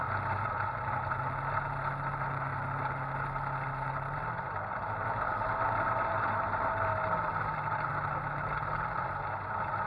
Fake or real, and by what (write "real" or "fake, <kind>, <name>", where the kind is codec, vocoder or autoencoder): real